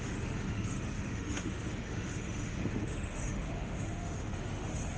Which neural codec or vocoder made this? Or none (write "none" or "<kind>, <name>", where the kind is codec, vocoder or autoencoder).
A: autoencoder, DAC-VAE